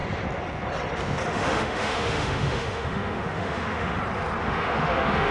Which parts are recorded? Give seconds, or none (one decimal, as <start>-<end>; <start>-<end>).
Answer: 0.0-1.3; 4.0-4.4

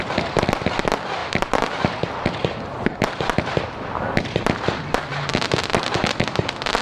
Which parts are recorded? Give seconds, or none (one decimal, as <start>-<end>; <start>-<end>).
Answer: 0.0-6.8

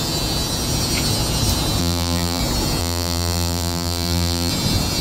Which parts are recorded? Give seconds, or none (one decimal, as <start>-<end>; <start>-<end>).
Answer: 0.0-1.8; 2.4-2.8; 4.5-5.0

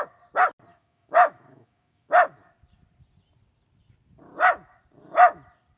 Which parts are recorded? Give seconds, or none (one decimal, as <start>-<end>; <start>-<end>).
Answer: 0.0-0.7; 2.1-5.8

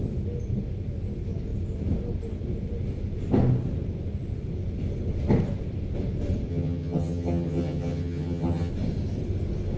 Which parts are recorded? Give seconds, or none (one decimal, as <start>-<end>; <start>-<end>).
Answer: 0.0-6.5; 8.7-9.8

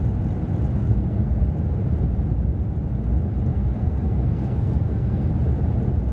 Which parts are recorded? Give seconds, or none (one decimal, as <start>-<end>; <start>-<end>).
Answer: 0.0-0.8; 1.4-3.5; 5.3-6.1